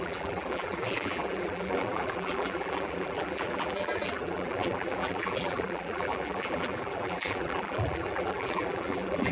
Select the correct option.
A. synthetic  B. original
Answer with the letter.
A